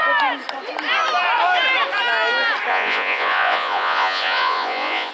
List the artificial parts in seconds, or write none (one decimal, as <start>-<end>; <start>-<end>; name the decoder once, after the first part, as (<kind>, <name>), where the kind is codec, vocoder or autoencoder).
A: 2.7-5.1 (vocoder, Vocos)